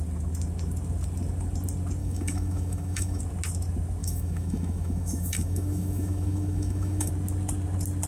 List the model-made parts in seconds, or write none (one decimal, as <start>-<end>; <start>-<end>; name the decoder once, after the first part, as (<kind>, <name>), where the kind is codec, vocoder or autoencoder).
2.0-3.2 (autoencoder, DAC-VAE); 4.0-7.1